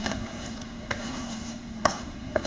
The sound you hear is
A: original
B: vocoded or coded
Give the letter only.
B